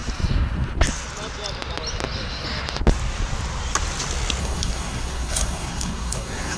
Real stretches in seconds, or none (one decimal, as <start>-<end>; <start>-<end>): 0.0-4.4